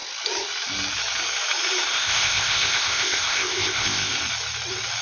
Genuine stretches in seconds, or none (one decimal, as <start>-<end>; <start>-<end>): 0.0-1.9; 4.1-5.0